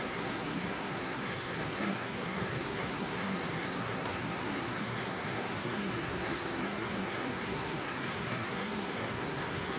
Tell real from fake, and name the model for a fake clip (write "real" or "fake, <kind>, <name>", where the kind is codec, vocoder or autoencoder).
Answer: fake, codec, SNAC